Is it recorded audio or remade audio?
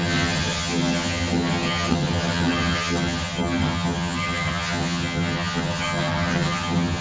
remade